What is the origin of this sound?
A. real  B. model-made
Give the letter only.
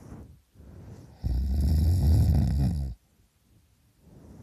A